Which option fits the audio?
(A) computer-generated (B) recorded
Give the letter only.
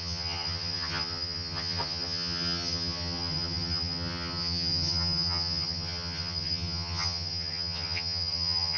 A